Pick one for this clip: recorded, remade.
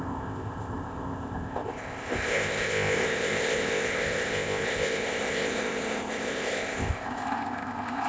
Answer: remade